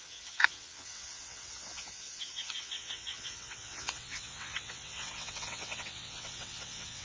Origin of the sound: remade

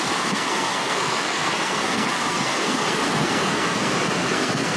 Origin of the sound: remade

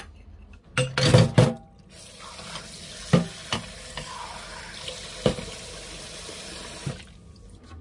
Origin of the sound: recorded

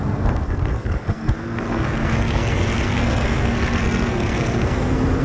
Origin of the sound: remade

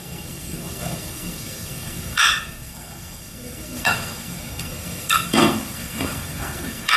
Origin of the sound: remade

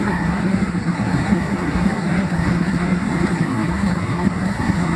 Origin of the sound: remade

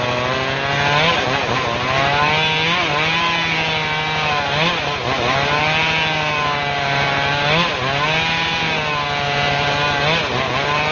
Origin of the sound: recorded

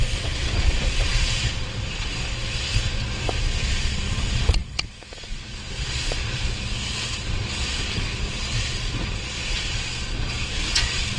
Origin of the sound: remade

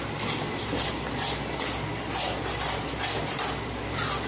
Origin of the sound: recorded